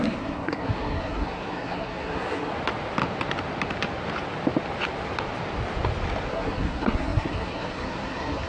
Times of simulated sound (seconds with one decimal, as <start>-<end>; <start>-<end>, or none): 0.0-2.5; 6.3-8.5